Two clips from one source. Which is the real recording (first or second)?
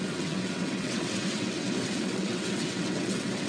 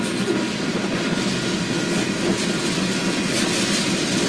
second